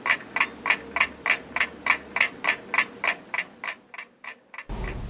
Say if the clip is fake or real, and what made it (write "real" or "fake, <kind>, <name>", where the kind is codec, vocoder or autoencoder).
real